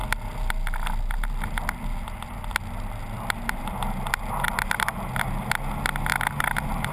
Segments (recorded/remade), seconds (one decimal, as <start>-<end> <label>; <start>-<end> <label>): 0.0-6.9 recorded